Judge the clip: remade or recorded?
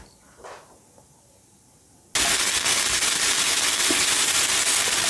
recorded